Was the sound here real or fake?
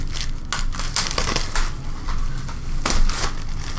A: real